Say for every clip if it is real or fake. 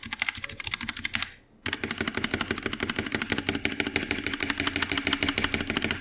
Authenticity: real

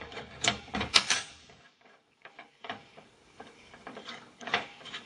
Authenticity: fake